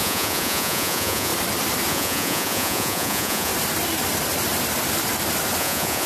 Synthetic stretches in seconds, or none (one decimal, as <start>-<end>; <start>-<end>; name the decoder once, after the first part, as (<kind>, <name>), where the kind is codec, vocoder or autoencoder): 0.0-1.3 (vocoder, Vocos); 1.9-3.5; 5.6-6.1